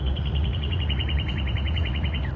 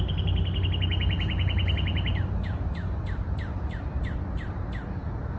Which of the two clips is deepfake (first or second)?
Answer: first